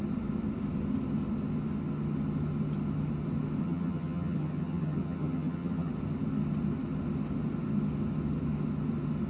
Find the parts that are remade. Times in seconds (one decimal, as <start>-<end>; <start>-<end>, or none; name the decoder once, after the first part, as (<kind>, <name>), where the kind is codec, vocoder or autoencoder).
3.6-5.9 (vocoder, HiFi-GAN)